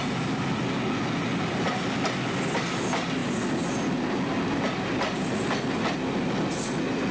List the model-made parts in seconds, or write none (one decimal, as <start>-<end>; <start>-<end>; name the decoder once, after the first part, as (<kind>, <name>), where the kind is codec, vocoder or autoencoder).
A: none